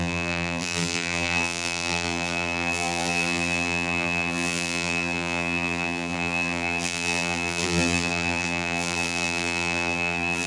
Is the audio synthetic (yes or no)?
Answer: yes